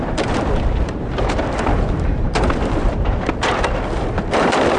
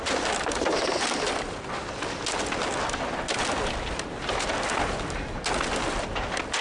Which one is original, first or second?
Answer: second